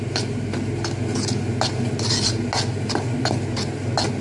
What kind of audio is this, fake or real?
real